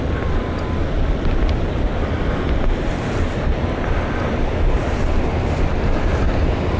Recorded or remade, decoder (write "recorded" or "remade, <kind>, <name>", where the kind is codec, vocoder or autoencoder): recorded